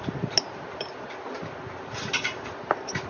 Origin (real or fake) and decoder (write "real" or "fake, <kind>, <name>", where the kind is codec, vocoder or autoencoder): real